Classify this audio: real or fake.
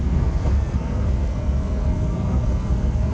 fake